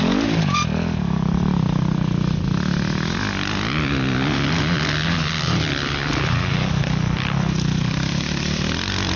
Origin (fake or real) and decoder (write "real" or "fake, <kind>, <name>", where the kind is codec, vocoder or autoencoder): real